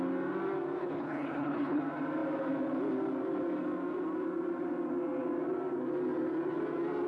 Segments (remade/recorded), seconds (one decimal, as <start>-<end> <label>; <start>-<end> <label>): 0.0-0.8 recorded; 0.8-1.8 remade; 1.8-7.1 recorded